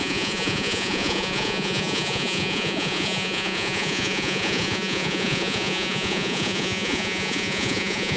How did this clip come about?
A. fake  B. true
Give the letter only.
A